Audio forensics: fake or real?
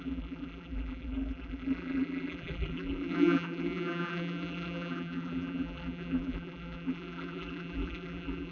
fake